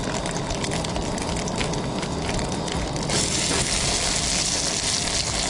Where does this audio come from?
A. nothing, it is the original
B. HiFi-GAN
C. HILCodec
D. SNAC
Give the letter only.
A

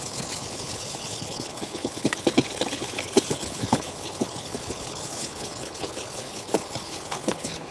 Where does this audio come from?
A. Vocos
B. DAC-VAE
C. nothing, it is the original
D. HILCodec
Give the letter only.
D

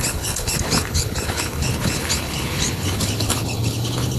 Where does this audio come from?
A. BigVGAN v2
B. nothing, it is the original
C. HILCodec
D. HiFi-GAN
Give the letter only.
C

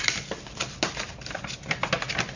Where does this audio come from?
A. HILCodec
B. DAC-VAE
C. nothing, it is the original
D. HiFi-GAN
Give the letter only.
C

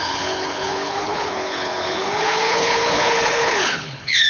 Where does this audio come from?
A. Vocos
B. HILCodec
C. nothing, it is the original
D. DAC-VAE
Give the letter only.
B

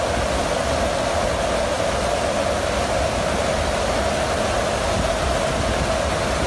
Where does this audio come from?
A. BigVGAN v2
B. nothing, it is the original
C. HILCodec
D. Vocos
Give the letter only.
B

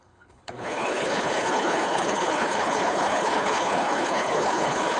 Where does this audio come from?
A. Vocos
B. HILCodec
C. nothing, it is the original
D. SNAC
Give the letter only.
B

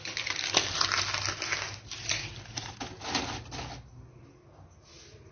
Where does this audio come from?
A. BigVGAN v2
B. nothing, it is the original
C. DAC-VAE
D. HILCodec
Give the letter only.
B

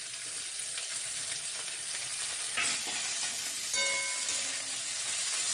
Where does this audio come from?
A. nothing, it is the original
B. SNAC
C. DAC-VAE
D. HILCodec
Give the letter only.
A